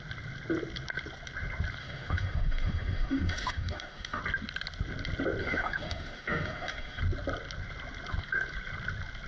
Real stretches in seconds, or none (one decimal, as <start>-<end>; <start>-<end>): 0.0-1.8; 4.2-5.4; 7.0-9.3